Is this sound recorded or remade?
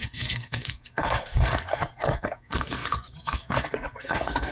remade